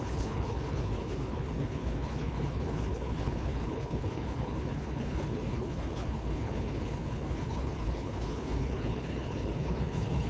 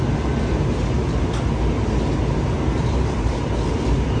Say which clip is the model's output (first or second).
first